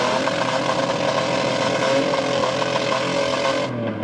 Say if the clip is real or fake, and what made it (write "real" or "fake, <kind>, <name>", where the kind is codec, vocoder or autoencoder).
real